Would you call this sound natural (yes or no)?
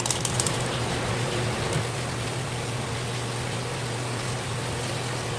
yes